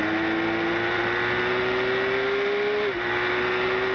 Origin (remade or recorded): recorded